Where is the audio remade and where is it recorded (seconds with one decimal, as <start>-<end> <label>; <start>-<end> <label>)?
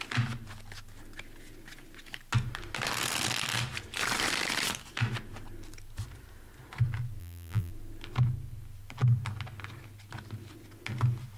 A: 0.0-7.2 recorded; 7.2-7.7 remade; 7.7-11.4 recorded